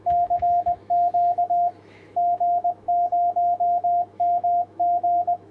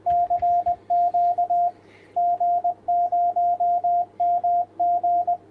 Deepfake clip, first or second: first